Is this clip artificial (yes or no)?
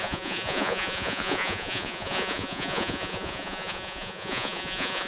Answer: yes